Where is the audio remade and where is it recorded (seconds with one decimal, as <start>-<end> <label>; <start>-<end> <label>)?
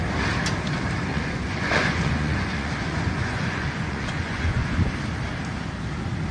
0.0-1.1 recorded; 1.1-4.9 remade; 4.9-6.3 recorded